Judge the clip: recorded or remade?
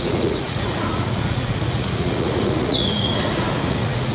remade